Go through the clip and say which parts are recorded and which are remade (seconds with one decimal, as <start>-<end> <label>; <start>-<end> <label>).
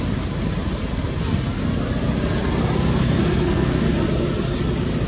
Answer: 0.0-3.2 recorded; 3.2-3.8 remade; 3.8-5.1 recorded